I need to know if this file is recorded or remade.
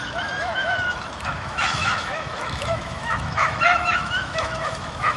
remade